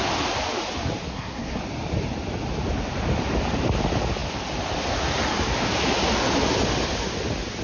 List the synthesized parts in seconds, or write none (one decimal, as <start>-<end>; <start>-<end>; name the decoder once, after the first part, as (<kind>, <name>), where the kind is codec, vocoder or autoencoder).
1.1-1.6 (codec, SNAC)